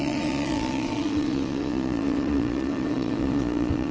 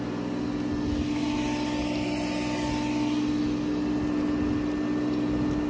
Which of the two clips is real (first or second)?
second